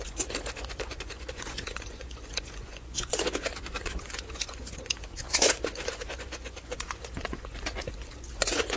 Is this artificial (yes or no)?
yes